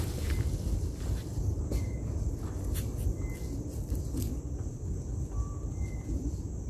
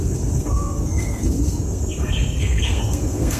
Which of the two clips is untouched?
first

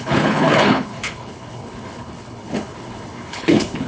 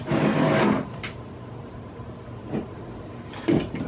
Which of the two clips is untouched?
second